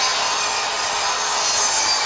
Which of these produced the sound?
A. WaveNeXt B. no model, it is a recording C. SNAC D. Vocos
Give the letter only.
B